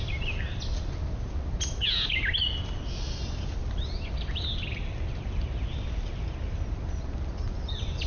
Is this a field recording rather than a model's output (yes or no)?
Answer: yes